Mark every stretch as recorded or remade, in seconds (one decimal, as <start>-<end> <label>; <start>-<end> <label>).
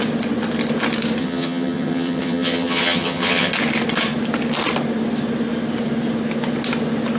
0.0-1.2 recorded; 1.2-3.5 remade; 3.5-7.2 recorded